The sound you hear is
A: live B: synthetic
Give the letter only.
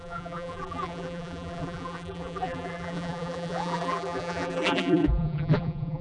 B